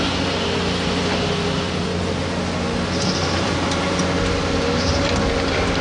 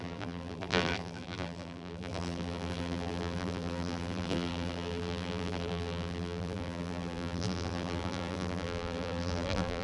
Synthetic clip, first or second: second